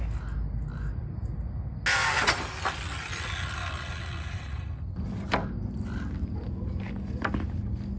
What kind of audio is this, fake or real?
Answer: real